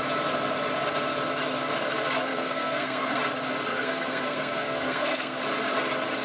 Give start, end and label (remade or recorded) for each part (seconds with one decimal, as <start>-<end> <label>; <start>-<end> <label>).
0.0-2.3 recorded; 2.3-3.2 remade; 3.2-3.7 recorded; 3.7-5.4 remade; 5.4-6.2 recorded